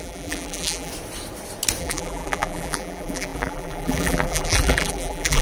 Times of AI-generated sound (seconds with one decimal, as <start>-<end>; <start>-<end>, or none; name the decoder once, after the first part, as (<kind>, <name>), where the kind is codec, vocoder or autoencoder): 0.0-0.9 (vocoder, BigVGAN v2); 1.8-5.4